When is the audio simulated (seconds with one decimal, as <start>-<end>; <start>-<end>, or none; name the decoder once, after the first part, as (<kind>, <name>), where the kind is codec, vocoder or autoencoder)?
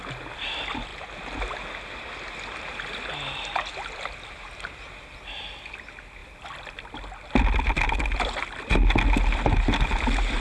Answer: none